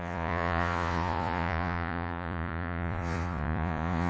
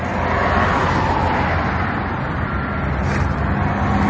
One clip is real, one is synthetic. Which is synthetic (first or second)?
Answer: first